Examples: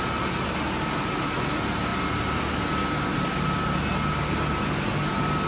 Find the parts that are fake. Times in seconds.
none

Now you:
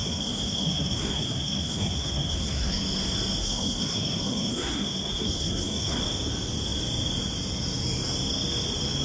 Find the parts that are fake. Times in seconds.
0.0-2.8; 3.4-6.0